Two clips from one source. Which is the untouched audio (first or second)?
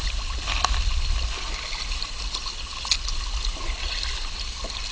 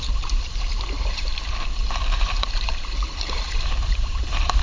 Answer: first